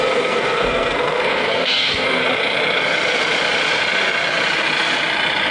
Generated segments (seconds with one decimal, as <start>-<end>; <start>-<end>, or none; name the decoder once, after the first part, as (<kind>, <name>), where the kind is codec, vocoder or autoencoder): 0.0-2.2 (codec, SNAC)